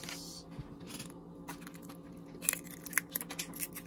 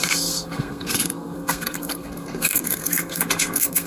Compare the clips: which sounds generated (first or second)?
second